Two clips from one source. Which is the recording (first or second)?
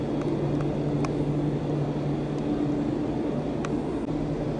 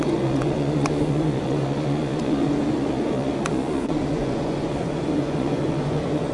first